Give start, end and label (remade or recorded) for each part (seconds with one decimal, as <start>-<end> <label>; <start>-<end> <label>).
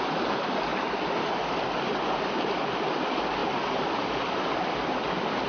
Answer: 0.0-5.5 recorded